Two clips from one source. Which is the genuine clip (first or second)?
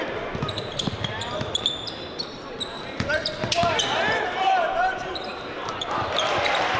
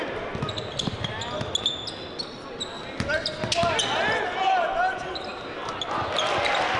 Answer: second